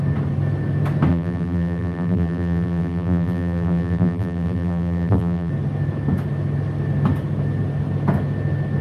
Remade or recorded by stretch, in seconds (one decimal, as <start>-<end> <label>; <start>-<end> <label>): 0.0-1.1 recorded; 1.1-5.5 remade; 5.5-8.8 recorded